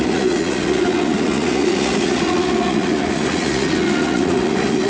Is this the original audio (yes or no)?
no